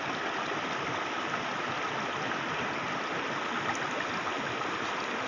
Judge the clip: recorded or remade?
recorded